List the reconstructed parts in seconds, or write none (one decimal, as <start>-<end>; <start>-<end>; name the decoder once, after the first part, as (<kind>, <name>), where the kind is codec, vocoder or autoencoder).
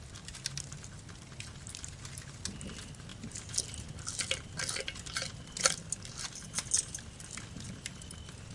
none